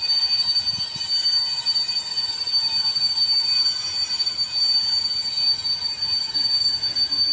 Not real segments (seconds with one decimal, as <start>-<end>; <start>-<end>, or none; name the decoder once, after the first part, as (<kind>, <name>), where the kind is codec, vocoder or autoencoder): 2.1-5.0 (vocoder, BigVGAN v2)